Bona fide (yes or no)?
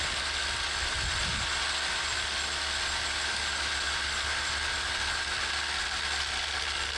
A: yes